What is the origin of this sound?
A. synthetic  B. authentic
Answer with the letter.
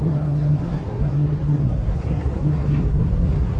A